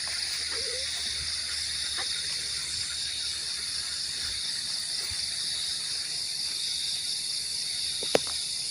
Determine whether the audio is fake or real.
real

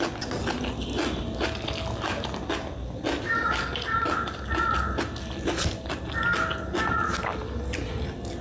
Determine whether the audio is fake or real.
real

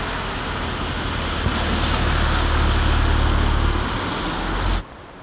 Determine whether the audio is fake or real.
real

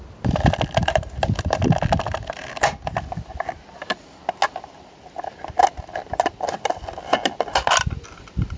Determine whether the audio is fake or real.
real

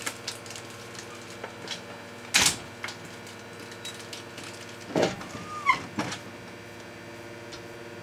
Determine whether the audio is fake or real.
real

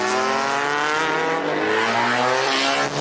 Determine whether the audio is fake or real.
real